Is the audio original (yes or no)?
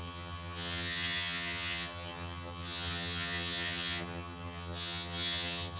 no